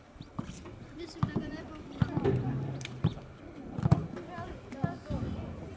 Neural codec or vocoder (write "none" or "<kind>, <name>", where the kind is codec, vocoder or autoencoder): none